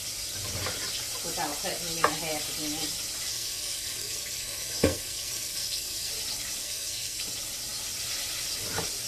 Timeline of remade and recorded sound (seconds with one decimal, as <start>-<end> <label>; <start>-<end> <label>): 0.0-3.3 recorded; 3.3-6.1 remade; 6.1-6.6 recorded; 6.6-7.2 remade; 7.2-9.1 recorded